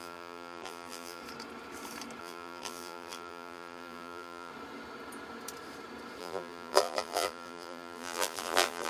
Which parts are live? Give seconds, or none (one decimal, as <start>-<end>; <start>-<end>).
1.2-2.2; 4.5-6.2